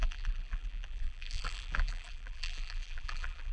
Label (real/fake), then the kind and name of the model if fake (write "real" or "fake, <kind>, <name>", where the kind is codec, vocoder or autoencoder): fake, vocoder, BigVGAN v2